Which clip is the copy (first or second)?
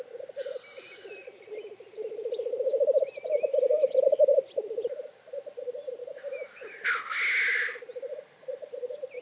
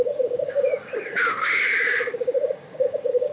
second